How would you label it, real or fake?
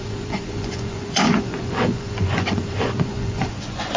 fake